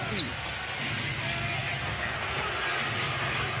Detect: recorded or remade recorded